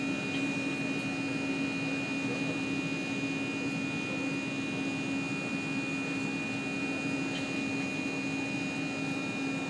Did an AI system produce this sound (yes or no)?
no